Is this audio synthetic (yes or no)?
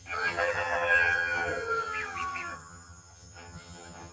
yes